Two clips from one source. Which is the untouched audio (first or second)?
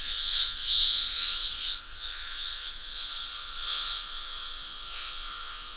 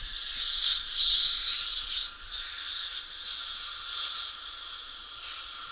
second